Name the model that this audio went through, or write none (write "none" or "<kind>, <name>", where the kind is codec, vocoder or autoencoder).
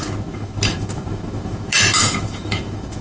autoencoder, DAC-VAE